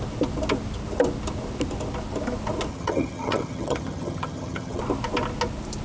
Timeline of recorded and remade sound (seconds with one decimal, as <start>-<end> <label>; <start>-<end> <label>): 0.0-2.7 recorded; 2.7-4.8 remade; 4.8-5.8 recorded